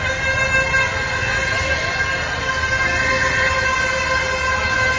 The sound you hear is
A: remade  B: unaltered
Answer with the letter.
B